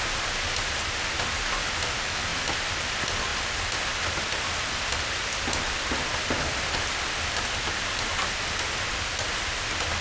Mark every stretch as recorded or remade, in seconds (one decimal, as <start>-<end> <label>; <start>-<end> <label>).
0.0-10.0 recorded